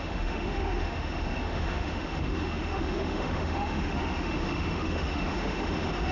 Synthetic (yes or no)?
yes